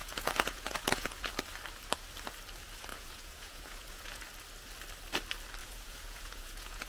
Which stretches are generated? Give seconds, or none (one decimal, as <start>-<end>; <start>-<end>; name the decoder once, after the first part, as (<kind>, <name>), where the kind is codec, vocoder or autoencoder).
0.0-1.3 (vocoder, Vocos); 2.9-4.2; 5.6-6.9